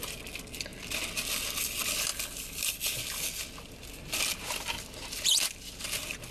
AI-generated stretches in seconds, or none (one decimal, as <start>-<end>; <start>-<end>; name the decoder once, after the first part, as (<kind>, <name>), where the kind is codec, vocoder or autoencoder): none